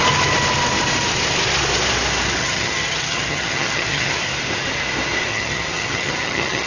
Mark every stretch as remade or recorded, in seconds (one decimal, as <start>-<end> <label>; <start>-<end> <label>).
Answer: 0.0-2.4 recorded; 2.4-4.2 remade; 4.2-5.3 recorded; 5.3-6.7 remade